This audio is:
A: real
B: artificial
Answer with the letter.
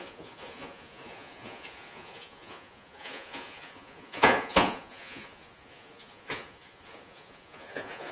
B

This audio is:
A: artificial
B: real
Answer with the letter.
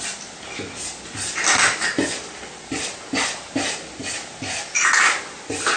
B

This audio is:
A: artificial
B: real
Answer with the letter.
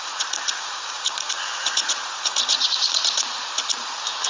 A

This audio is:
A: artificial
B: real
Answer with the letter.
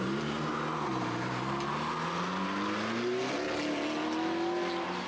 B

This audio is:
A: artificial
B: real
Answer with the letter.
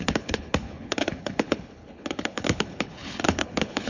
A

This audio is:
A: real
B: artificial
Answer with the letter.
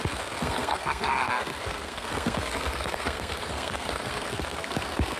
B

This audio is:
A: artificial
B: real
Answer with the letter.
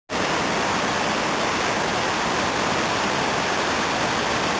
B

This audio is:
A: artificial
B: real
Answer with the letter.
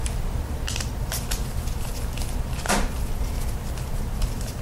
B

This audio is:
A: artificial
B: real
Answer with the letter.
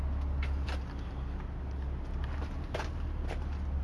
B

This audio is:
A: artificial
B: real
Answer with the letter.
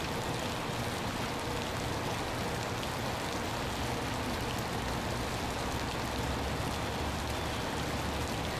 B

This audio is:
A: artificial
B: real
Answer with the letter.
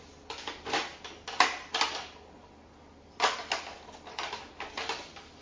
B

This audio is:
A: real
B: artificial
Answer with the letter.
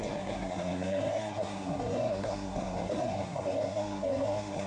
B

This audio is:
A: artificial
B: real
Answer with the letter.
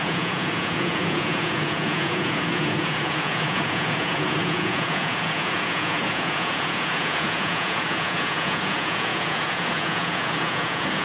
A